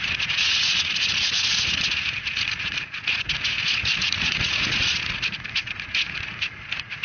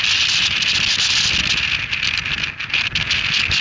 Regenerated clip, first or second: first